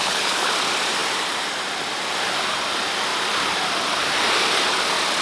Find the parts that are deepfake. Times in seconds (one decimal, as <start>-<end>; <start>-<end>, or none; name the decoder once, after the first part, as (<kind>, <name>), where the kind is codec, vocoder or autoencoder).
0.0-0.5 (codec, HILCodec)